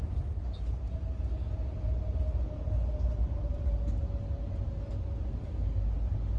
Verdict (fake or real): real